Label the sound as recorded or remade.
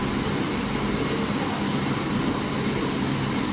recorded